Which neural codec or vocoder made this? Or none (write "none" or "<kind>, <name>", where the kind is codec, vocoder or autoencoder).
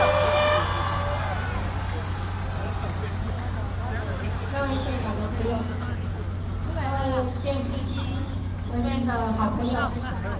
none